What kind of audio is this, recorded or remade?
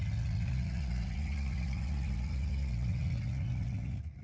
remade